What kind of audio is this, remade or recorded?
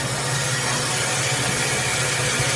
recorded